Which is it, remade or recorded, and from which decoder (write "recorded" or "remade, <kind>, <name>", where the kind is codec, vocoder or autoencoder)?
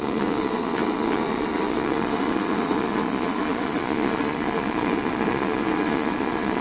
remade, vocoder, Vocos